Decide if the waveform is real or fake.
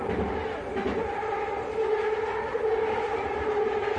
real